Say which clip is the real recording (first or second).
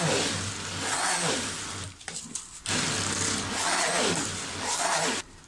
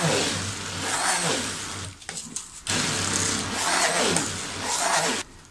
second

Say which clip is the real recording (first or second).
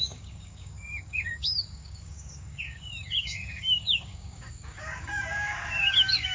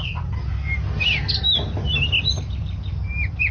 second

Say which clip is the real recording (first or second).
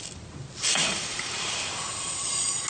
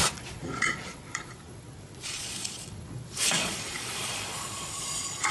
first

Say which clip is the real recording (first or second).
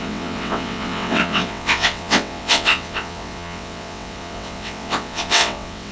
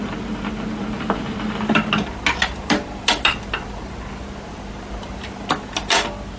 second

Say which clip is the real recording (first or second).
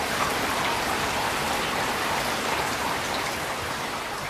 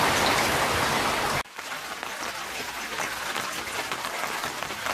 second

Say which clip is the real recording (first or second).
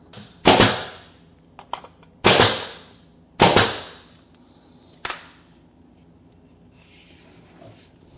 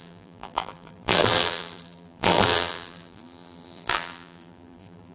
first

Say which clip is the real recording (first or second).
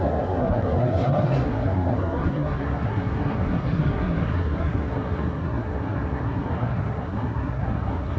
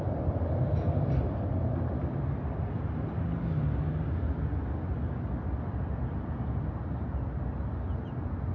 second